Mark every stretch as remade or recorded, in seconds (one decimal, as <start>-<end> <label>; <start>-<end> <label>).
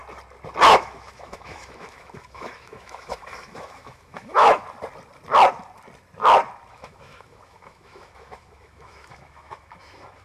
0.0-0.7 recorded; 0.7-4.6 remade; 4.6-6.7 recorded; 6.7-10.2 remade